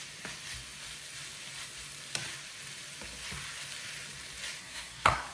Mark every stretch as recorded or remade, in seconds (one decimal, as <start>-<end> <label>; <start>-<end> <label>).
0.0-4.6 recorded; 4.6-5.3 remade